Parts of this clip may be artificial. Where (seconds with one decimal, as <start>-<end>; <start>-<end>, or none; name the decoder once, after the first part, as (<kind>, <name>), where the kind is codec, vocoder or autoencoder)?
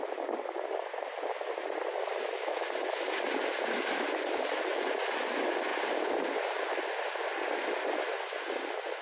none